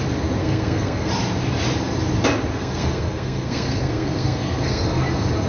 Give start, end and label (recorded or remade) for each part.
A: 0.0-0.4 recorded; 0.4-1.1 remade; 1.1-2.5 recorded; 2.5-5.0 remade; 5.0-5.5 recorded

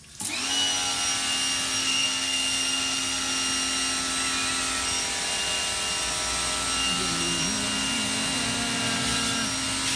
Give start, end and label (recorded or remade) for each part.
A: 0.0-1.8 recorded; 1.8-3.3 remade; 3.3-10.0 recorded